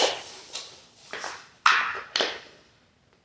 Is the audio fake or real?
real